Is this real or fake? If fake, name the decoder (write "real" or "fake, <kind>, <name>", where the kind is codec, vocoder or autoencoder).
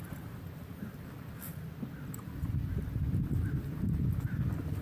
real